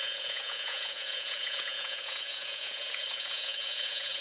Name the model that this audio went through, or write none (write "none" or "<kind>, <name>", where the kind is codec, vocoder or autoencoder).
vocoder, Vocos